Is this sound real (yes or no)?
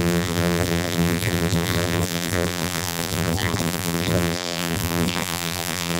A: no